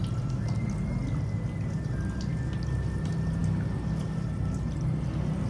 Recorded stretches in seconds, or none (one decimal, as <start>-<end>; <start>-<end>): 0.0-5.5

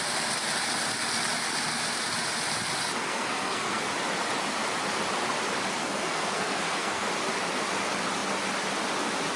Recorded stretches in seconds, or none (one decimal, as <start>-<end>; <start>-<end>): 0.0-3.0; 3.8-5.8; 7.1-9.4

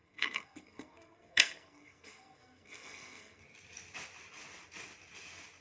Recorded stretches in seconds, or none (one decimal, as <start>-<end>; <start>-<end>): 3.4-5.6

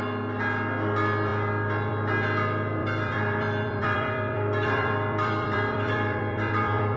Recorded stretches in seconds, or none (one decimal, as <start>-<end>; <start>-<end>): 0.0-2.8

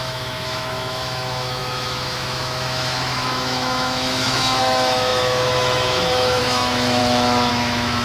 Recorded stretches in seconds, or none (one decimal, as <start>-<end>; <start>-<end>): 7.0-7.5

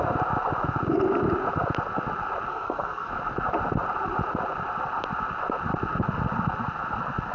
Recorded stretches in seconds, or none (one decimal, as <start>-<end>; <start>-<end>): 0.0-2.5; 3.1-7.3

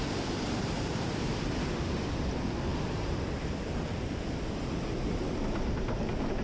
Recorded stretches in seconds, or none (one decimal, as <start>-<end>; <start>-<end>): 2.0-2.7; 3.5-6.4